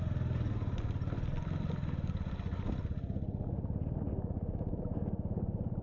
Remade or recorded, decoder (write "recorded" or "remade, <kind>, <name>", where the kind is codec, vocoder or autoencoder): recorded